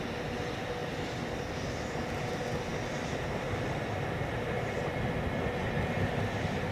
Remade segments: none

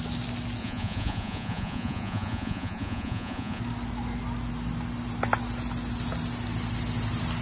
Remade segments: 0.6-3.6 (vocoder, Vocos)

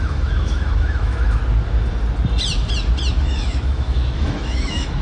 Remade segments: 0.0-1.4 (autoencoder, DAC-VAE); 3.2-5.0

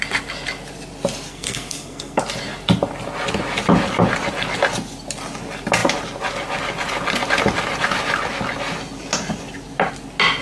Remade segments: 1.3-2.2 (codec, SNAC)

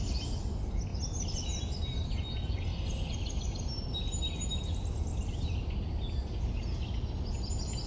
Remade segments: none

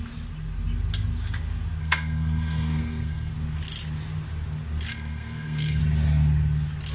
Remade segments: 1.8-3.3 (codec, SNAC); 4.9-5.8